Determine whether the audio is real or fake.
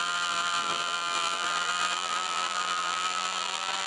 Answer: fake